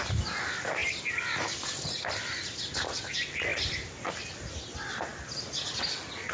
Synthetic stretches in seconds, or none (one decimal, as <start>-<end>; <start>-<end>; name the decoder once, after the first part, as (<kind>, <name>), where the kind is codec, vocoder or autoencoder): none